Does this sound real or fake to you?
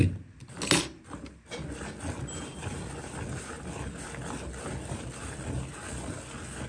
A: real